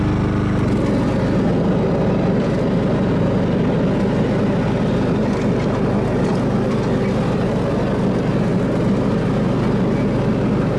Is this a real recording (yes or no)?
yes